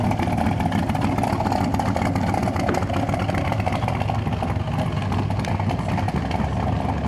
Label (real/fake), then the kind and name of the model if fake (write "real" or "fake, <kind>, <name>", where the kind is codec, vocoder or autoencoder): real